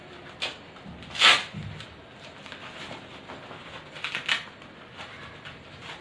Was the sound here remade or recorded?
recorded